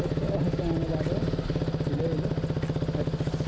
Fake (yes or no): no